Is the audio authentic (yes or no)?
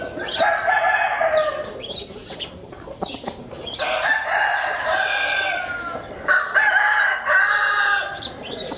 yes